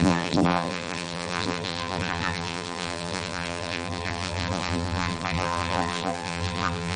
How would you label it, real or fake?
fake